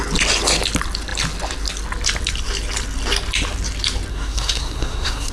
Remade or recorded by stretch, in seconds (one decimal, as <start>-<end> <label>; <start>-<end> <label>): 0.0-4.1 recorded; 4.1-5.3 remade